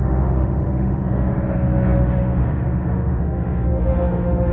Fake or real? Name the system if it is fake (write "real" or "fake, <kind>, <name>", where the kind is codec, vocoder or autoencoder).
fake, autoencoder, DAC-VAE